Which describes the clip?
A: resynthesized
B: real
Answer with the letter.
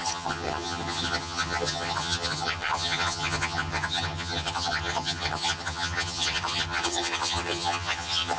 A